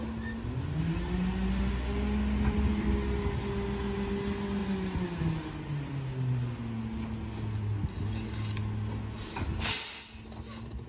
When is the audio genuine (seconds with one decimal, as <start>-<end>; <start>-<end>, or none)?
0.0-10.9